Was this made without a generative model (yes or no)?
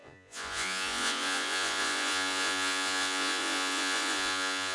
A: no